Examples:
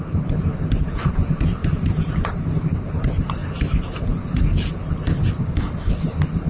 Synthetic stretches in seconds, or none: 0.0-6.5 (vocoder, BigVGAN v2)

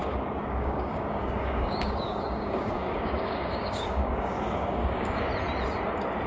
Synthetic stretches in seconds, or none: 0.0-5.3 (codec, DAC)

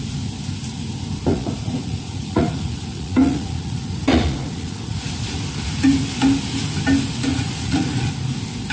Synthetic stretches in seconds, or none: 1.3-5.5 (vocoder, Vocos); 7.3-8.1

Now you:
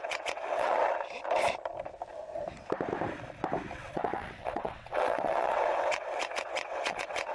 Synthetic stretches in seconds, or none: 0.0-0.8 (vocoder, WaveNeXt); 3.8-7.3

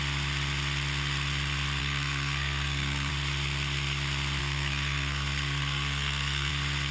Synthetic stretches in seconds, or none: 1.8-3.1 (codec, SNAC); 4.4-6.5

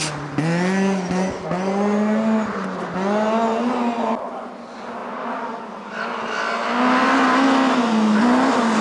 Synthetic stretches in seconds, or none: none